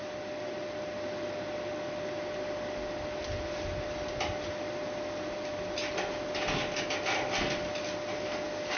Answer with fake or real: real